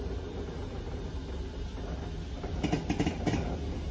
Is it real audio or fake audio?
real